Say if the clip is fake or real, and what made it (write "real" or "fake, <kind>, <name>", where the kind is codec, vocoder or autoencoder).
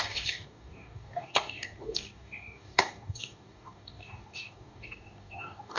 fake, codec, DAC